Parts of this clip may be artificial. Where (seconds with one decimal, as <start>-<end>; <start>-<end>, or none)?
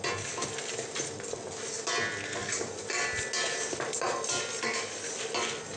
none